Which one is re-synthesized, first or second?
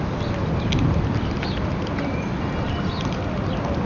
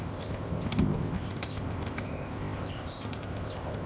second